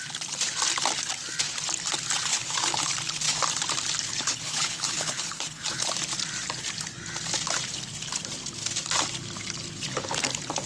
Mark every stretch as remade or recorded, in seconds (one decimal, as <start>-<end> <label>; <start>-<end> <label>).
0.0-2.3 recorded; 2.3-2.9 remade; 2.9-4.1 recorded; 4.1-5.9 remade; 5.9-10.7 recorded